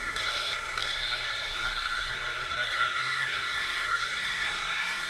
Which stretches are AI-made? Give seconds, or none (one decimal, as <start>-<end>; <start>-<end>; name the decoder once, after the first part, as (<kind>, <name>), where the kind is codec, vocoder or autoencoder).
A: 0.0-5.1 (codec, SNAC)